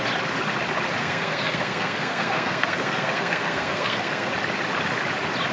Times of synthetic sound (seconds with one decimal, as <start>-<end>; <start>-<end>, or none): 1.0-4.3